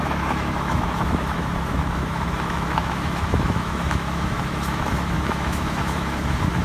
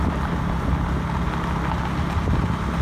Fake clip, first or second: first